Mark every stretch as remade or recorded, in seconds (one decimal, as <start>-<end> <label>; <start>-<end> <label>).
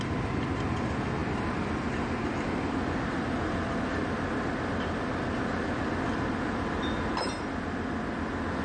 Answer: 0.0-8.6 recorded